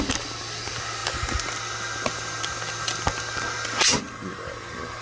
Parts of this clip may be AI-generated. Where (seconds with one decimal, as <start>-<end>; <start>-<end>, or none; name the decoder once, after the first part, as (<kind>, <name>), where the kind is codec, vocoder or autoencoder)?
none